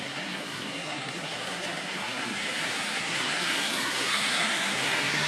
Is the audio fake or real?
fake